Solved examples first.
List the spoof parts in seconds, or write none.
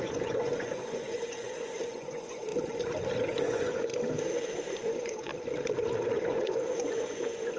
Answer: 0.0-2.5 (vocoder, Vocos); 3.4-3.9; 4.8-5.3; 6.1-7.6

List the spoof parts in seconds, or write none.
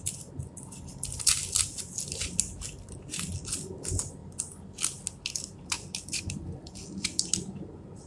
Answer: none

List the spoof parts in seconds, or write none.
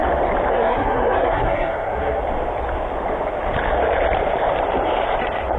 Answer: 0.5-2.2 (codec, SNAC)